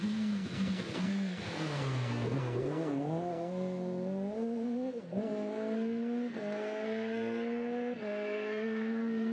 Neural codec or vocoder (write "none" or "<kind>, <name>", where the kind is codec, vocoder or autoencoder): codec, SNAC